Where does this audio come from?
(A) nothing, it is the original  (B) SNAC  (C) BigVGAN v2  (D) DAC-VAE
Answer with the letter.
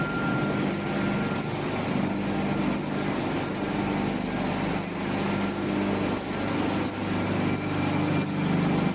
A